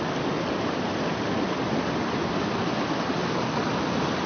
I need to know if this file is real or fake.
real